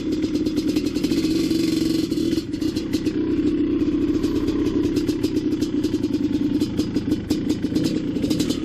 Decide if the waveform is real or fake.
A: real